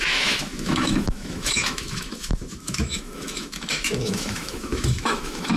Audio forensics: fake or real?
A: fake